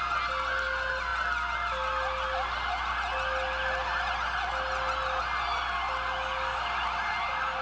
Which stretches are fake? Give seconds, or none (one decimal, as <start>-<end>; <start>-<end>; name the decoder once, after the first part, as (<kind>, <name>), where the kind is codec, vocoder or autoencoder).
none